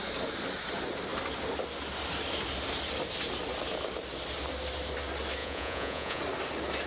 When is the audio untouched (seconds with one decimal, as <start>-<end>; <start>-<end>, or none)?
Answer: 0.0-5.4; 6.2-6.9